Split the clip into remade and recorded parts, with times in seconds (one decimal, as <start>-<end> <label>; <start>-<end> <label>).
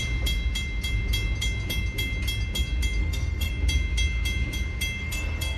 0.0-3.0 recorded; 3.0-3.5 remade; 3.5-5.0 recorded; 5.0-5.6 remade